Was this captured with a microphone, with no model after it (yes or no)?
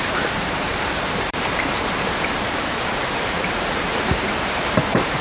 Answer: no